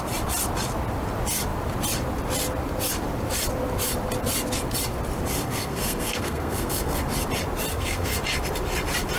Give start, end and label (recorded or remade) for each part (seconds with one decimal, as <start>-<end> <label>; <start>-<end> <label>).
0.0-5.4 recorded; 5.4-7.0 remade; 7.0-7.7 recorded; 7.7-8.2 remade; 8.2-9.2 recorded